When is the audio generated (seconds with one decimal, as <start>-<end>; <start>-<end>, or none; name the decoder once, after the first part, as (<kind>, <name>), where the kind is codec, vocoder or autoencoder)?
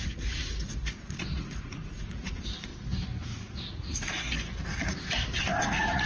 0.0-2.7 (vocoder, Vocos); 3.7-4.2; 5.6-6.1